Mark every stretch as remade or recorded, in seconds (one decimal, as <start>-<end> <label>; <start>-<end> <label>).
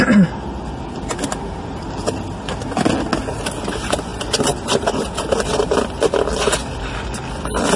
0.0-7.8 recorded